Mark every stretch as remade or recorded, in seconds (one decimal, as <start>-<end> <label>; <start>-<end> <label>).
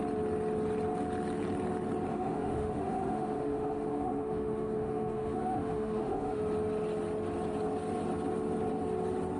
0.0-2.1 recorded; 2.1-6.4 remade; 6.4-9.4 recorded